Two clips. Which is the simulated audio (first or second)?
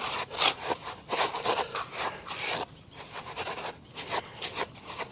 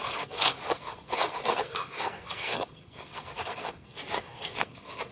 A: second